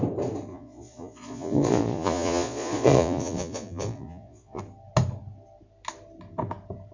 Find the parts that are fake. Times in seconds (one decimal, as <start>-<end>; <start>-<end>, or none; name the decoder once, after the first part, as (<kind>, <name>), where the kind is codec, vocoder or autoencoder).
0.5-4.6 (vocoder, Vocos)